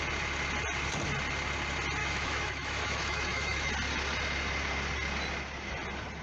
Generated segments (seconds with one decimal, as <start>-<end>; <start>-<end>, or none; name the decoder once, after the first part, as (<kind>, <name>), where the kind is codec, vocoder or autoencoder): 2.0-3.7 (autoencoder, DAC-VAE)